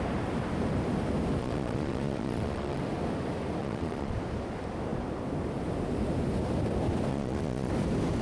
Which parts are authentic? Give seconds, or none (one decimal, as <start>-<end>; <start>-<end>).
0.0-1.4; 2.8-3.6; 4.1-7.1; 7.7-8.2